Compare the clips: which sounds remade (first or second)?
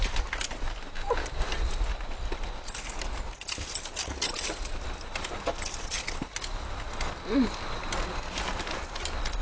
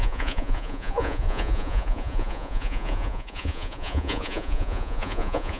second